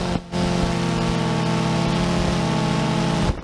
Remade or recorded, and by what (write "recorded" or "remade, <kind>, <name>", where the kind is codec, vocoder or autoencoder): recorded